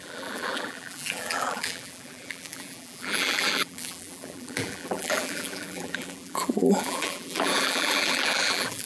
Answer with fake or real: fake